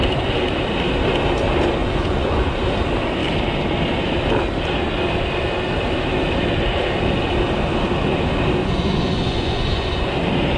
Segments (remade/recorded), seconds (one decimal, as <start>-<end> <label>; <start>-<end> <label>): 0.0-1.8 recorded; 1.8-2.4 remade; 2.4-8.6 recorded; 8.6-10.1 remade; 10.1-10.6 recorded